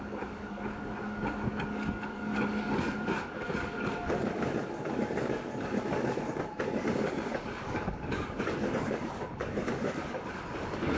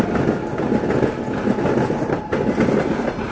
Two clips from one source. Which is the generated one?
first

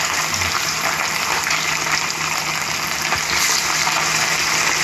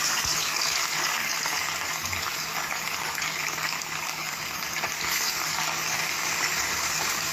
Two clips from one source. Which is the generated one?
second